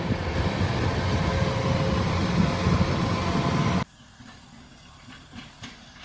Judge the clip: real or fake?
real